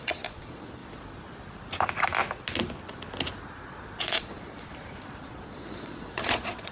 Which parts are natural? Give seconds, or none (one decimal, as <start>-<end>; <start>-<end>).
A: 0.8-4.0; 4.7-5.2